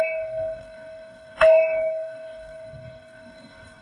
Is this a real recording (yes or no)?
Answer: no